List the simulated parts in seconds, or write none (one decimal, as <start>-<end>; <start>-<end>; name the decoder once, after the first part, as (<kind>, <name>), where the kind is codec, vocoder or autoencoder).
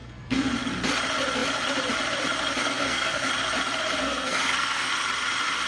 0.0-0.5 (codec, SNAC); 2.6-3.3; 4.0-4.9